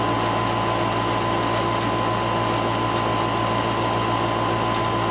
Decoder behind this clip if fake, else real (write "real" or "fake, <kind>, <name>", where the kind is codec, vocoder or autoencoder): real